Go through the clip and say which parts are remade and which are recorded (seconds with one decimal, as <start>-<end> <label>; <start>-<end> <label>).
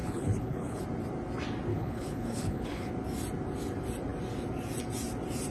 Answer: 0.0-0.8 remade; 0.8-1.7 recorded; 1.7-2.9 remade; 2.9-5.5 recorded